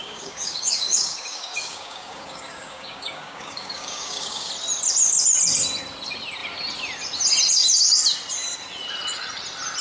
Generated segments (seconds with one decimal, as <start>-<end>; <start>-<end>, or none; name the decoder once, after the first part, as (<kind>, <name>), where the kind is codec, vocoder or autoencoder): 0.0-4.5 (codec, DAC)